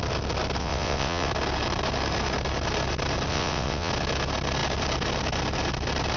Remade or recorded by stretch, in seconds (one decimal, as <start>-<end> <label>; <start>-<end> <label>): 0.0-0.6 recorded; 0.6-1.3 remade; 1.3-3.3 recorded; 3.3-3.9 remade; 3.9-6.2 recorded